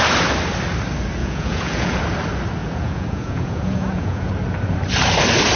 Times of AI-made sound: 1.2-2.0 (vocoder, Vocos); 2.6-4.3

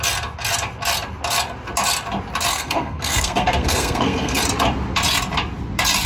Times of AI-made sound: 2.5-4.4 (codec, SNAC)